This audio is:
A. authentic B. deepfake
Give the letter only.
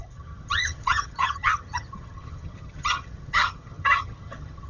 B